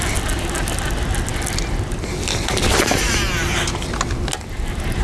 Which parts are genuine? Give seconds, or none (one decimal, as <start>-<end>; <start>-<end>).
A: 0.0-5.0